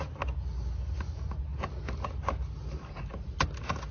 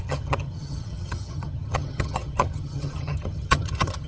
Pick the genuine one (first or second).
first